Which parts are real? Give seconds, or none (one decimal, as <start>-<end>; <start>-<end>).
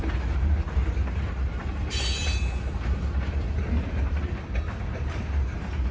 0.0-5.9